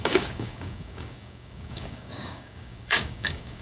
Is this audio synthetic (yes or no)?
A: yes